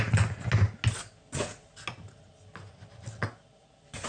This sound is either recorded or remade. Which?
recorded